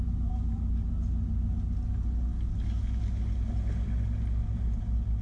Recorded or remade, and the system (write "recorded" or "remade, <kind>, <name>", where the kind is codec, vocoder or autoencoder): recorded